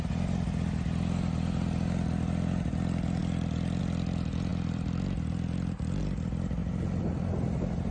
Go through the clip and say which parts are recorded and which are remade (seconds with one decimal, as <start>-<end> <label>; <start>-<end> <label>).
0.0-4.5 recorded; 4.5-6.0 remade; 6.0-7.9 recorded